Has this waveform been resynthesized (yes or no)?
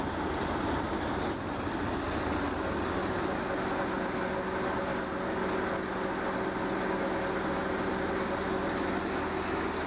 no